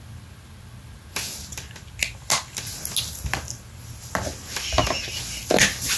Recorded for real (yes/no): yes